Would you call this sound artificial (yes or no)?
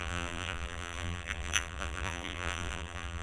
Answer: yes